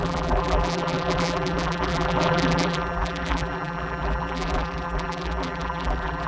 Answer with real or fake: fake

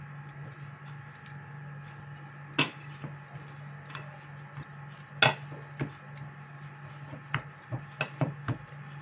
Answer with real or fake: real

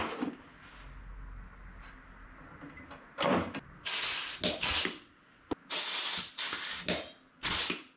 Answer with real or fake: real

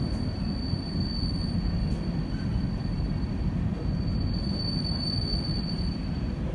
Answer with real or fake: real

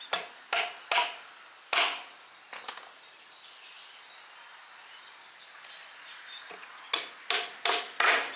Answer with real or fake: real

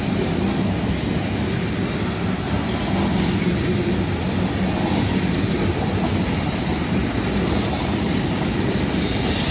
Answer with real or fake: real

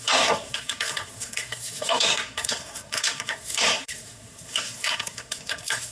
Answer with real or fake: fake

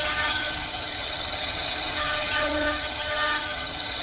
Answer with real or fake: fake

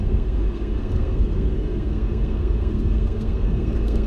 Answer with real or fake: fake